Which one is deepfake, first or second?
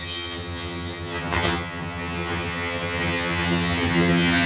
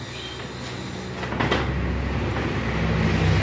first